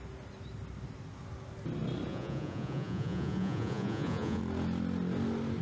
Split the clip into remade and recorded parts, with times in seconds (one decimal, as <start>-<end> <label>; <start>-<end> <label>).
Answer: 0.0-2.1 recorded; 2.1-4.4 remade; 4.4-5.6 recorded